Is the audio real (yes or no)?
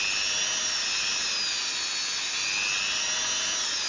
yes